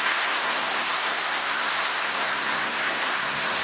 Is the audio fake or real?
fake